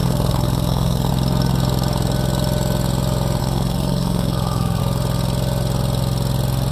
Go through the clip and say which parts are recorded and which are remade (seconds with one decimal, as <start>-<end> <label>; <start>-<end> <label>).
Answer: 0.0-1.1 remade; 1.1-3.4 recorded; 3.4-4.8 remade; 4.8-6.7 recorded